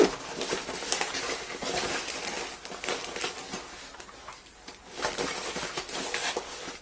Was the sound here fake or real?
real